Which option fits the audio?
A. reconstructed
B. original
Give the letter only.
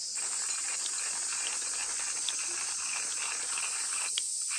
B